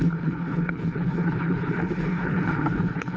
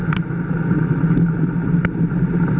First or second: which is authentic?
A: second